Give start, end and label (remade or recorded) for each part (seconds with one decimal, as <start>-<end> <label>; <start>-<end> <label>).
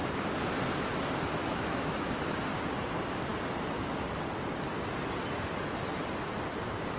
0.0-1.4 recorded; 1.4-2.4 remade; 2.4-7.0 recorded